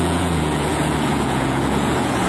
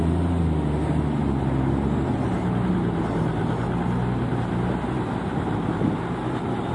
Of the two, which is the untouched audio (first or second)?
second